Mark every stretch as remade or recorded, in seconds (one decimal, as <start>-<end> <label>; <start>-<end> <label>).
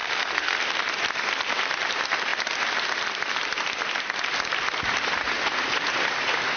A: 0.0-0.6 remade; 0.6-6.6 recorded